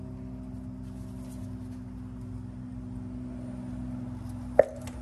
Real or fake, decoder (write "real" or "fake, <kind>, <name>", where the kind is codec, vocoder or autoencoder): real